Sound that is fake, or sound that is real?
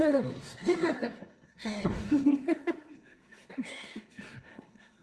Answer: fake